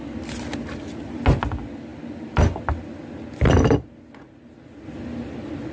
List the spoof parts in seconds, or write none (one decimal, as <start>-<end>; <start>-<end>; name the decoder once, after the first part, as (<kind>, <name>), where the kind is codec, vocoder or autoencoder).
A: none